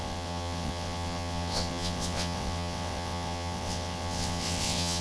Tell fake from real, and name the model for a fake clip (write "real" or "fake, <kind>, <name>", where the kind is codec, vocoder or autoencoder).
fake, vocoder, WaveNeXt